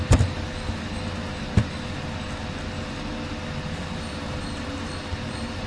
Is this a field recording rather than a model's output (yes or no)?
yes